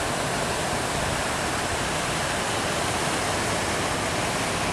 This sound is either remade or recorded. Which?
recorded